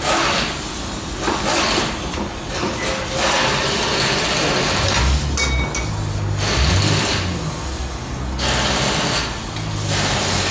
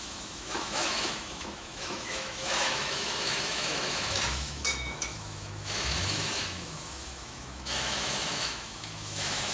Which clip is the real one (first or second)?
first